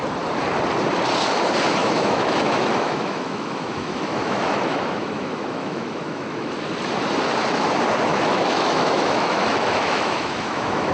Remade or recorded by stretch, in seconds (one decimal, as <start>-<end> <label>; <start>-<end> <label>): 0.0-1.8 recorded; 1.8-6.5 remade; 6.5-8.1 recorded; 8.1-10.9 remade